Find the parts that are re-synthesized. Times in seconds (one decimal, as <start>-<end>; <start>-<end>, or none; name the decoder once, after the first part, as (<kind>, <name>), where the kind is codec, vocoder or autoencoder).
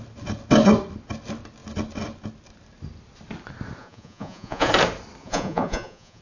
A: 3.8-4.7 (vocoder, Vocos); 5.2-6.2